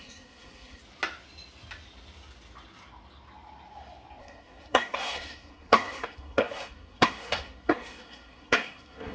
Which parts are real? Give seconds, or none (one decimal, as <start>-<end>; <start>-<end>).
0.8-4.2